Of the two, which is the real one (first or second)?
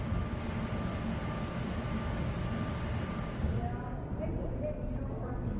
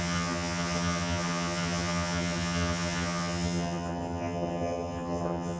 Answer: first